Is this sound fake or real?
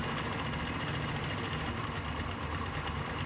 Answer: real